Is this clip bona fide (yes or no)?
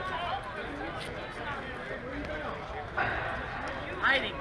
yes